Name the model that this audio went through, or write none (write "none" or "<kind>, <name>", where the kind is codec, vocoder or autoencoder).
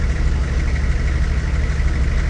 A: none